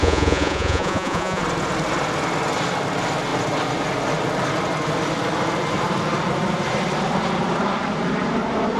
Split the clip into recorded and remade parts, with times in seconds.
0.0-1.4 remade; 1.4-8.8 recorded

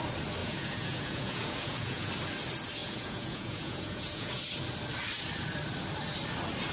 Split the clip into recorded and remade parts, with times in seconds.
0.0-0.4 recorded; 0.4-2.1 remade; 2.1-2.8 recorded; 2.8-4.4 remade; 4.4-6.7 recorded